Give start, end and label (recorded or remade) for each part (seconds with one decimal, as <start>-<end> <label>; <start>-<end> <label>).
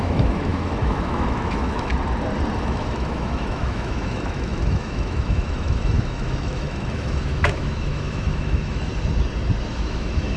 0.0-1.9 remade; 1.9-2.6 recorded; 2.6-8.9 remade; 8.9-9.7 recorded; 9.7-10.4 remade